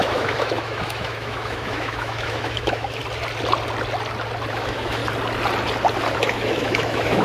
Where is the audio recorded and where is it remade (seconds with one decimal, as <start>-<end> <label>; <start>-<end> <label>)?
0.0-3.0 remade; 3.0-4.5 recorded; 4.5-5.0 remade; 5.0-6.1 recorded; 6.1-7.2 remade